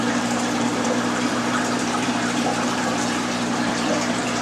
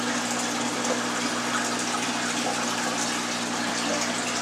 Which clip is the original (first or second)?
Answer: second